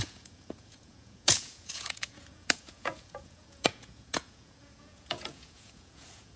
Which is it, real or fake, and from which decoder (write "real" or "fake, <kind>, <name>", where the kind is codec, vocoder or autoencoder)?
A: fake, vocoder, Vocos